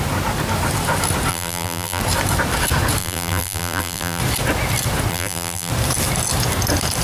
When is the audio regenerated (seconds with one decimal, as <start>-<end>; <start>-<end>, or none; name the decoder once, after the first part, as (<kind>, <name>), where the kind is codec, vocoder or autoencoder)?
1.3-2.0 (vocoder, BigVGAN v2); 3.0-4.2; 5.1-5.7